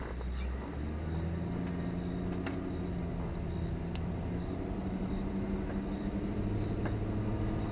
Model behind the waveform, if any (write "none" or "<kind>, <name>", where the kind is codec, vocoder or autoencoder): none